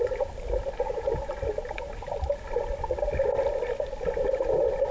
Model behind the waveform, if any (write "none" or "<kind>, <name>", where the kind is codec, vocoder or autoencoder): none